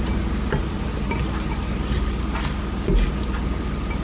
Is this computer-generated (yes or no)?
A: no